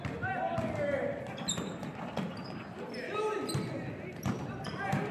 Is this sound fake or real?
real